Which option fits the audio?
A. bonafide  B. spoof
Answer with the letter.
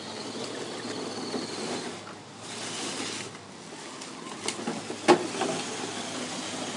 A